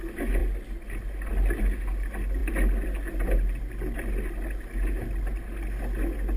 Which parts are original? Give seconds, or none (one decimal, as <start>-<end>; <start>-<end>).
0.0-6.4